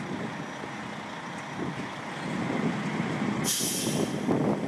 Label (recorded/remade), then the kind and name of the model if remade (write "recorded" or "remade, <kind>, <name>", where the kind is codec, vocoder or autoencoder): recorded